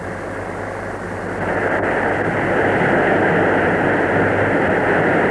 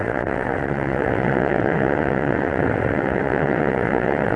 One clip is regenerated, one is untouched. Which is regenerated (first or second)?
second